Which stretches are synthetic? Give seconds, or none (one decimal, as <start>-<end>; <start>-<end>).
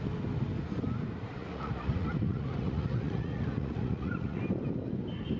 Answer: 1.4-4.4